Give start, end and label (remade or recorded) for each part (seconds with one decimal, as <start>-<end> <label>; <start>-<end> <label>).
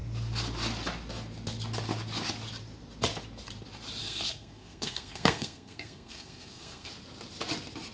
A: 0.0-4.0 recorded; 4.0-6.9 remade; 6.9-7.9 recorded